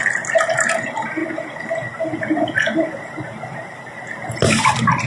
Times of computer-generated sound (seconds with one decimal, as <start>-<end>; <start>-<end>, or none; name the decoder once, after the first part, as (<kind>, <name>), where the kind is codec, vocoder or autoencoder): 0.7-5.1 (vocoder, BigVGAN v2)

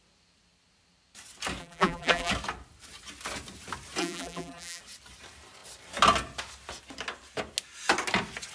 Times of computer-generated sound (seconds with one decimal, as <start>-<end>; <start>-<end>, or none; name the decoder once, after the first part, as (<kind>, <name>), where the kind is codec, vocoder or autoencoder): 1.6-2.3 (vocoder, BigVGAN v2); 4.0-4.8

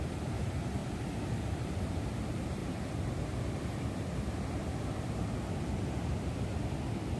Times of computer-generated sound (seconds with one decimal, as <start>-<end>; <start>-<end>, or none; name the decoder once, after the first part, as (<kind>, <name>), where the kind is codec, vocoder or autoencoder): 0.0-0.8 (vocoder, BigVGAN v2); 1.4-2.6; 3.5-4.6